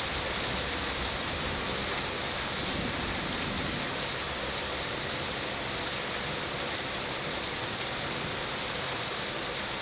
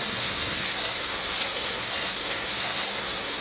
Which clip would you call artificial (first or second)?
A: second